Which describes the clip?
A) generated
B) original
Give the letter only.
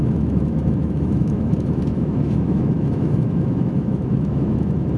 A